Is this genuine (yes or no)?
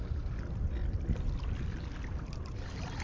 yes